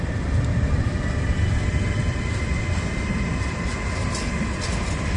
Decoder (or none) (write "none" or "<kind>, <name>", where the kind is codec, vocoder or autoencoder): none